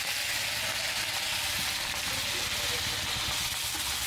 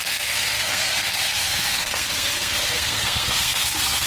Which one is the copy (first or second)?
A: second